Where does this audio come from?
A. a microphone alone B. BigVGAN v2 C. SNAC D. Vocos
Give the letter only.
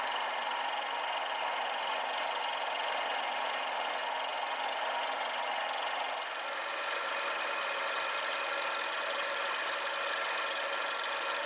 A